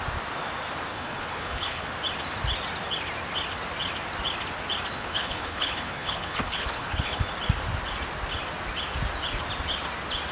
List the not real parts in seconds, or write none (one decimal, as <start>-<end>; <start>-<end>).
0.9-1.9; 4.9-7.2